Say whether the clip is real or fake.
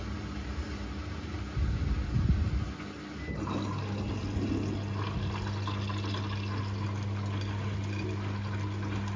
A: real